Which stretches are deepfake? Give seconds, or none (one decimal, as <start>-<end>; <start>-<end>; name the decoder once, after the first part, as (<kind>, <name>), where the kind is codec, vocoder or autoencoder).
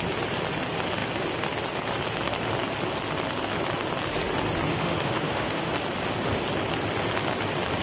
4.7-5.7 (autoencoder, DAC-VAE)